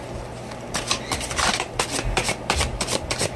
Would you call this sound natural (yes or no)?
no